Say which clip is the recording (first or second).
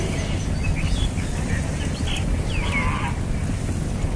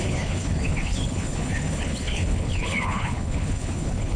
first